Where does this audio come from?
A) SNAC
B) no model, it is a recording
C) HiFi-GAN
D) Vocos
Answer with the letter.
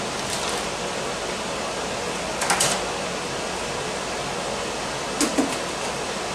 B